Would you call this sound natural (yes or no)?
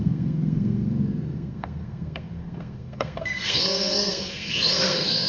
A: no